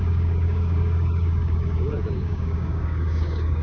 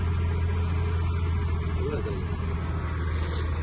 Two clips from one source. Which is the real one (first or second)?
second